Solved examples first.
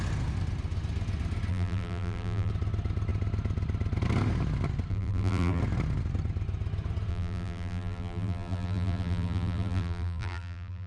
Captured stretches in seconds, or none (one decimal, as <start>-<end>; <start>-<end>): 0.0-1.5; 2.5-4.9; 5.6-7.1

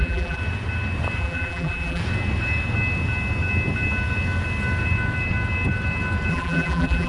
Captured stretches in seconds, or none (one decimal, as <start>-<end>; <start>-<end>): 0.4-1.2; 2.0-6.3

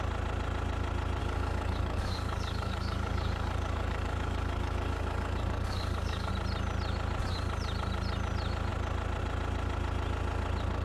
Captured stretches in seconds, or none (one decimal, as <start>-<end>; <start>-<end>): 0.0-1.2; 6.3-10.8

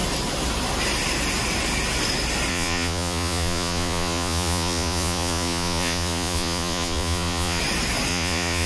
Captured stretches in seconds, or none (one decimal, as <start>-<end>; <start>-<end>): 0.0-2.5; 7.6-8.1

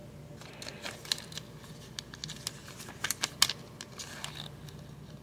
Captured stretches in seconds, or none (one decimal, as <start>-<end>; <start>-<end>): 0.0-5.2

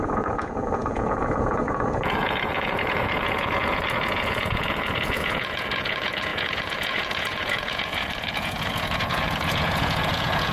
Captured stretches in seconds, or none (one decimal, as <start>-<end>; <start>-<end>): none

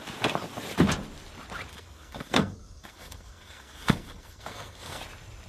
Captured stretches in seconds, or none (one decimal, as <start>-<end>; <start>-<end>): 0.0-1.7; 5.0-5.5